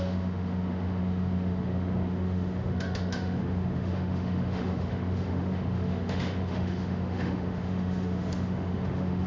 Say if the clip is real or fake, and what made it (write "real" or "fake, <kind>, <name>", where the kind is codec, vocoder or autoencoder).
fake, autoencoder, DAC-VAE